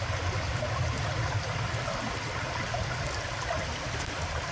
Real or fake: real